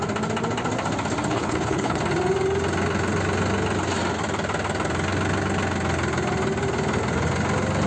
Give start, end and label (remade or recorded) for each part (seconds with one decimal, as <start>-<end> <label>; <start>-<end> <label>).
0.0-1.3 recorded; 1.3-2.0 remade; 2.0-7.9 recorded